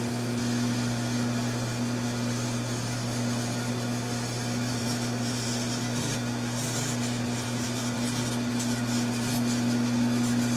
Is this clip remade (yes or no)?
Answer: no